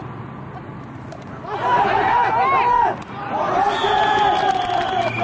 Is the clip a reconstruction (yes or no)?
no